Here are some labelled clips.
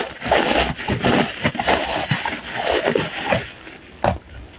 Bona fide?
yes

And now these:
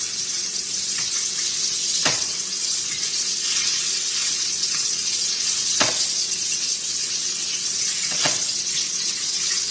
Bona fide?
no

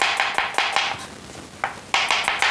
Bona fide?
yes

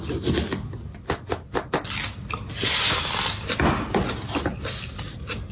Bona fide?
yes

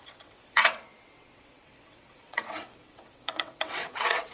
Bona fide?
no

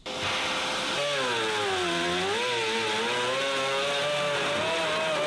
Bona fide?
yes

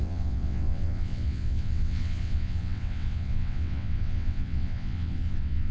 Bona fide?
no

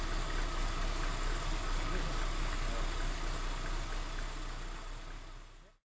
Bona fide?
yes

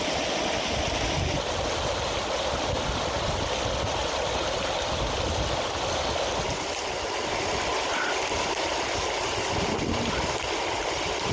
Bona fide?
yes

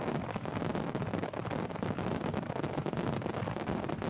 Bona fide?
yes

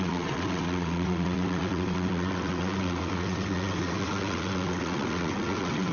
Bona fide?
no